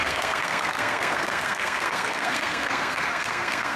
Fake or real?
fake